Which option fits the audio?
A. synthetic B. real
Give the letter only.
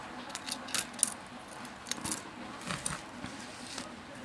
B